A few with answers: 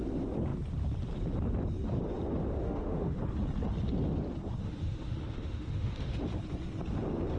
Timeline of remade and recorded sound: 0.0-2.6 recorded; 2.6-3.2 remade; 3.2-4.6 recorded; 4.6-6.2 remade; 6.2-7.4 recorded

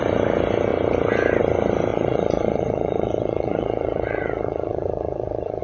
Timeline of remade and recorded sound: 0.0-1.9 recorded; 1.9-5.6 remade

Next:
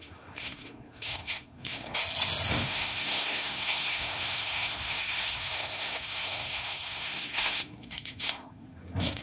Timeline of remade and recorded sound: 0.0-2.0 remade; 2.0-2.5 recorded; 2.5-9.2 remade

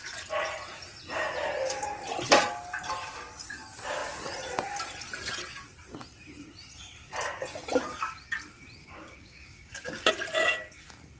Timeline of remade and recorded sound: 0.0-8.8 recorded; 8.8-10.1 remade; 10.1-11.2 recorded

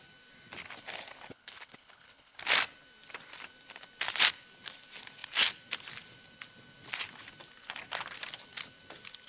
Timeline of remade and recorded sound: 0.0-1.3 recorded; 1.3-2.4 remade; 2.4-9.3 recorded